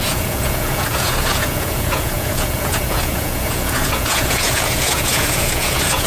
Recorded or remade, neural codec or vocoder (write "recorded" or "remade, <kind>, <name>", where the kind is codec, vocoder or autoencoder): remade, vocoder, Vocos